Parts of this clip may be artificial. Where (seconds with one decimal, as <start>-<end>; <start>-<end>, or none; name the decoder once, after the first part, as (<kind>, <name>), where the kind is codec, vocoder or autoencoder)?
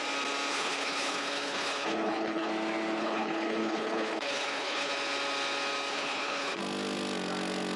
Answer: 0.5-2.5 (codec, HILCodec); 3.0-4.9; 5.9-6.6